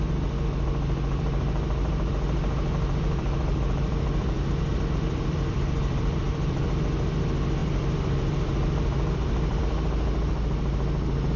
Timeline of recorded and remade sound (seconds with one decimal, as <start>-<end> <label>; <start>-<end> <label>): 0.0-2.7 recorded; 2.7-6.7 remade; 6.7-7.6 recorded; 7.6-9.6 remade; 9.6-11.4 recorded